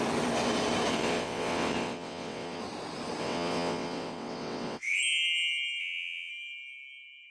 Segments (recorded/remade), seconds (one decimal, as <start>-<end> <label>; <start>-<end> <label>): 0.0-0.9 recorded; 0.9-2.6 remade; 2.6-3.2 recorded; 3.2-5.0 remade; 5.0-5.8 recorded; 5.8-6.3 remade; 6.3-7.3 recorded

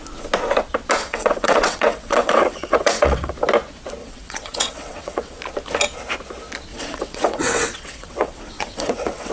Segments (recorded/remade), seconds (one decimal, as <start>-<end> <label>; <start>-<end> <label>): 0.0-1.0 recorded; 1.0-3.3 remade; 3.3-4.0 recorded; 4.0-5.4 remade; 5.4-6.7 recorded; 6.7-9.3 remade